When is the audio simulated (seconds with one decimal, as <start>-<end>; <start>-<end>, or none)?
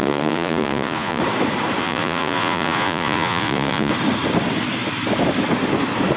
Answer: 0.0-1.2; 1.8-3.9